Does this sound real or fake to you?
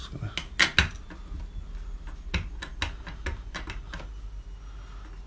real